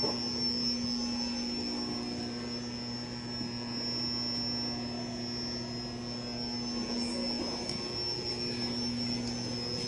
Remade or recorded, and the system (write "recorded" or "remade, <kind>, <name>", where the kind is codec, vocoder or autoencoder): recorded